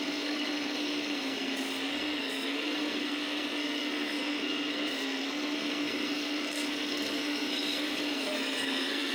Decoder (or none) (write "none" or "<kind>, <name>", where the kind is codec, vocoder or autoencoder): codec, SNAC